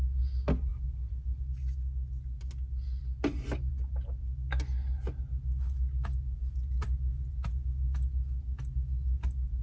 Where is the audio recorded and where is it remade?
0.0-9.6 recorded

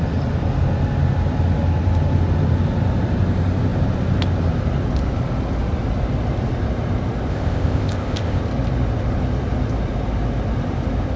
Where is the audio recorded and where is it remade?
0.0-7.3 recorded; 7.3-8.4 remade; 8.4-11.2 recorded

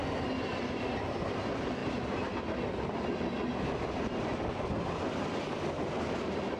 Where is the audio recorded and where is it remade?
0.0-6.6 recorded

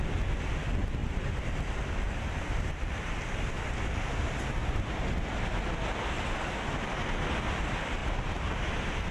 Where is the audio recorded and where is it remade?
0.0-1.0 recorded; 1.0-3.2 remade; 3.2-9.1 recorded

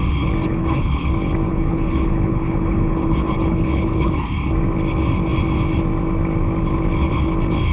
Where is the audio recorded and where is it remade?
0.0-0.5 recorded; 0.5-1.0 remade; 1.0-1.5 recorded; 1.5-4.1 remade; 4.1-7.7 recorded

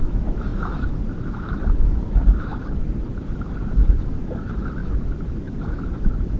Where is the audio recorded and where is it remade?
0.0-2.5 remade; 2.5-3.2 recorded; 3.2-6.4 remade